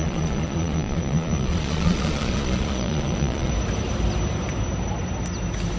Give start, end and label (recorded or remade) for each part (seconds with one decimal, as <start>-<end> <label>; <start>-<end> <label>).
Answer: 0.0-3.5 remade; 3.5-5.8 recorded